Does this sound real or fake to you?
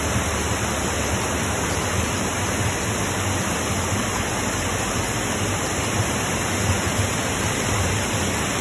real